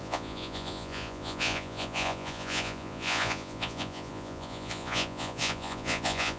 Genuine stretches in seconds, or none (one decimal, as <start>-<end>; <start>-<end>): none